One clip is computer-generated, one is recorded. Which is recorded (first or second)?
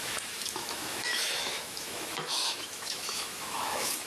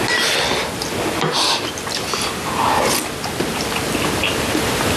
second